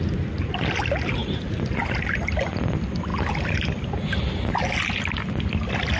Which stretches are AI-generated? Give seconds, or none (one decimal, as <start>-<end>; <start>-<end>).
none

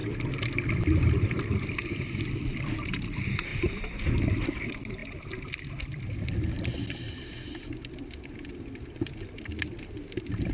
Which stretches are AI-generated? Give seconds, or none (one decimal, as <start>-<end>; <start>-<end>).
none

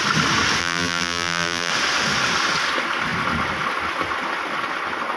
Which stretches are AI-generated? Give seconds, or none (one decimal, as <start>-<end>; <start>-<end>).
0.6-1.7

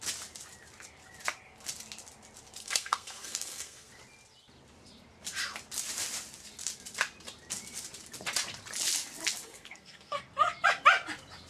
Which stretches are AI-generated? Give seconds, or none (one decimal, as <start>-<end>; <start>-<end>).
2.6-3.9; 9.4-10.2

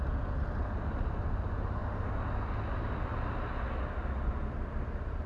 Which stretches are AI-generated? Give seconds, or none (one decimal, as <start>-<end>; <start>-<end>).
none

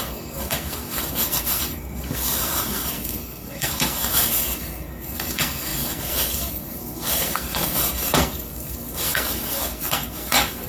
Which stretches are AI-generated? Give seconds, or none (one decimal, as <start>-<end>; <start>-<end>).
0.0-10.7